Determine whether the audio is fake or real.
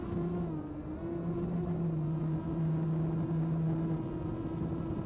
real